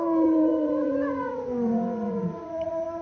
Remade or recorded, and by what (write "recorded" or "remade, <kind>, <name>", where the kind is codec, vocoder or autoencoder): remade, vocoder, Vocos